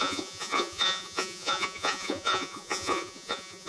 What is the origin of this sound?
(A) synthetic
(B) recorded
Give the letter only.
A